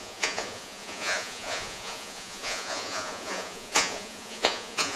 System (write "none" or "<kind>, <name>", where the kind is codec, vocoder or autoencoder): vocoder, Vocos